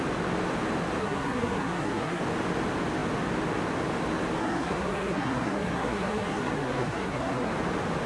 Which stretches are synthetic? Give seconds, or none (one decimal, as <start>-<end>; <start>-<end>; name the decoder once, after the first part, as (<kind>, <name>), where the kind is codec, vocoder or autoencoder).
1.0-2.2 (codec, SNAC); 4.4-7.5

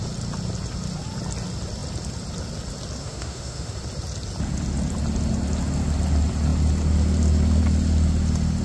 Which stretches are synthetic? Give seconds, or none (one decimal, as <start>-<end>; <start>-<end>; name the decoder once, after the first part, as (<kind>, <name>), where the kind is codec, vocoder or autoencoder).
3.0-3.7 (autoencoder, DAC-VAE)

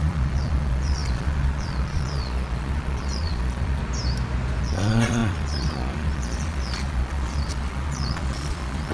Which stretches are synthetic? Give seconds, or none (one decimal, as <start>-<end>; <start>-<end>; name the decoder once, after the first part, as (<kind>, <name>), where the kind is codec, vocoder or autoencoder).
0.0-3.8 (vocoder, Vocos); 4.6-8.9

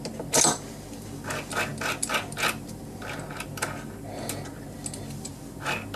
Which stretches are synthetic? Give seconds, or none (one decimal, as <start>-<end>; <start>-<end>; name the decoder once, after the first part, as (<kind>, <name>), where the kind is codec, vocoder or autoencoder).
none

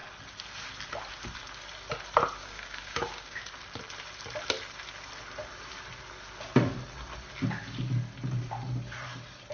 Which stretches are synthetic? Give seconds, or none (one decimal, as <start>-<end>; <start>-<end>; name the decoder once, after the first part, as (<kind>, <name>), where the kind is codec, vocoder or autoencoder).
2.4-3.4 (codec, DAC)